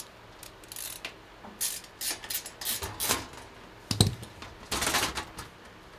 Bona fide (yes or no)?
yes